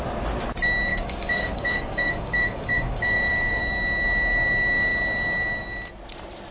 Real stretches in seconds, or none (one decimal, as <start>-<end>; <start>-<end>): 0.0-0.9; 3.6-6.5